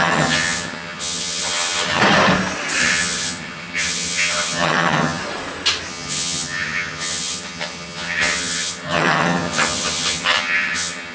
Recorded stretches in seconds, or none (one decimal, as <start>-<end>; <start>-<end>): 2.0-2.8; 5.2-5.9